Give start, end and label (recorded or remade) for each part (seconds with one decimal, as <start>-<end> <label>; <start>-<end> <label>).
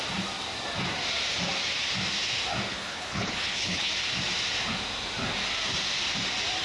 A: 0.0-2.7 recorded; 2.7-3.9 remade; 3.9-6.6 recorded